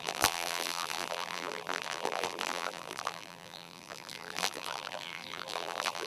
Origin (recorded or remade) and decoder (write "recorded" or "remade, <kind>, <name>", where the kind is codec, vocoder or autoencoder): remade, vocoder, BigVGAN v2